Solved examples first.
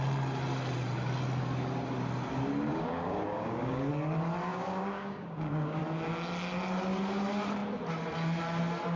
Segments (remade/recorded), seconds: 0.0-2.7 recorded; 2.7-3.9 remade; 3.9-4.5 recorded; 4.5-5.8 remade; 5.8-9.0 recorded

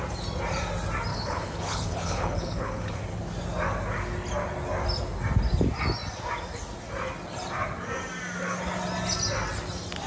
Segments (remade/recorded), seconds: 0.0-1.1 recorded; 1.1-3.0 remade; 3.0-10.1 recorded

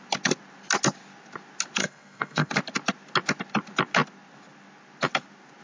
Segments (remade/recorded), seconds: 0.0-1.8 recorded; 1.8-2.5 remade; 2.5-5.6 recorded